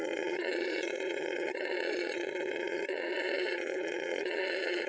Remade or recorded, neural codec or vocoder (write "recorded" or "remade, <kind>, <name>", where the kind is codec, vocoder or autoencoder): remade, vocoder, Vocos